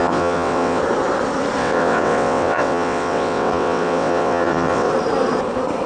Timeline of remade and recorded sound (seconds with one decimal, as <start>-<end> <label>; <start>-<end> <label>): 0.0-0.8 remade; 0.8-1.6 recorded; 1.6-4.9 remade; 4.9-5.9 recorded